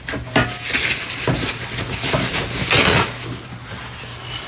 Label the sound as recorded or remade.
recorded